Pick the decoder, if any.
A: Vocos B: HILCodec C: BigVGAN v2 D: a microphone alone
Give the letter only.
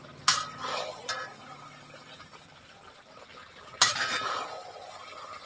D